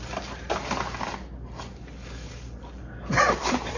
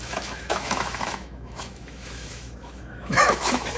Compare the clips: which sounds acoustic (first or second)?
first